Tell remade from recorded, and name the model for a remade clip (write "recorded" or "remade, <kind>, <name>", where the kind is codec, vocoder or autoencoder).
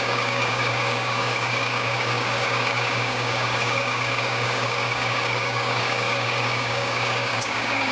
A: remade, codec, DAC